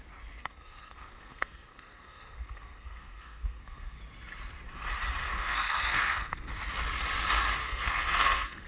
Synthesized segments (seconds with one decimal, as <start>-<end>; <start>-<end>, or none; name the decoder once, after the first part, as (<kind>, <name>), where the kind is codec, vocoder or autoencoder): 0.4-4.0 (codec, SNAC); 5.2-6.5; 7.6-8.7